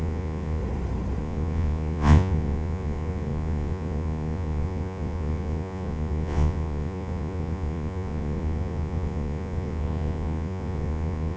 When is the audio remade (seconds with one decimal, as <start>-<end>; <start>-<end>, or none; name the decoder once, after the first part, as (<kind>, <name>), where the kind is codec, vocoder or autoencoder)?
0.0-0.6 (vocoder, Vocos); 1.2-11.4